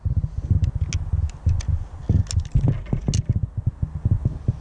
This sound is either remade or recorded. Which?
recorded